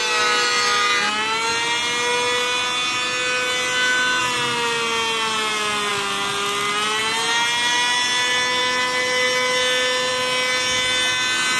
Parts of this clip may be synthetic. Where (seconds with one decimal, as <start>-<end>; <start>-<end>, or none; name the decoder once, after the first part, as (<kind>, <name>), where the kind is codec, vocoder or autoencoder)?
none

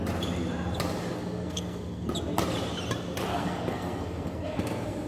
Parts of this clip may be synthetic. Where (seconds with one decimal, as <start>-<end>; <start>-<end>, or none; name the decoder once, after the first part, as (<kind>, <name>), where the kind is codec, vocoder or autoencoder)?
1.1-2.1 (codec, SNAC); 3.3-5.1

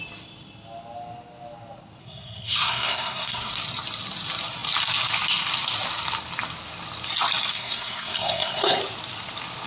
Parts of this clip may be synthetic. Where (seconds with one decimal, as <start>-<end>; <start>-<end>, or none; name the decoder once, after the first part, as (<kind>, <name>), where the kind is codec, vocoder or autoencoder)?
2.0-3.5 (codec, SNAC); 7.5-8.8